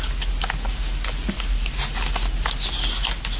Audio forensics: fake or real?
real